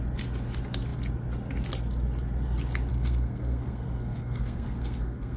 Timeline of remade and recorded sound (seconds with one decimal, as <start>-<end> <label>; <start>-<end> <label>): 0.0-2.9 recorded; 2.9-5.4 remade